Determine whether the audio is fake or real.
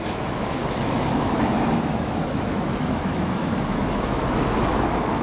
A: fake